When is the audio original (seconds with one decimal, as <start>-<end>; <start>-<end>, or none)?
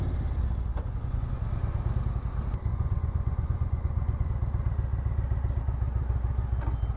0.0-0.7; 1.4-2.7; 4.3-7.0